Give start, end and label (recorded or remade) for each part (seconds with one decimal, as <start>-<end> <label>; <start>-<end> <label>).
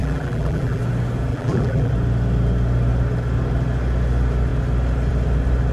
0.0-0.8 remade; 0.8-1.3 recorded; 1.3-1.9 remade; 1.9-5.7 recorded